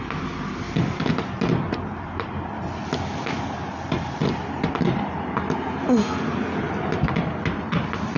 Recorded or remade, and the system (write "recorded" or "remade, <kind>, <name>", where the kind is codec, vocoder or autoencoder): recorded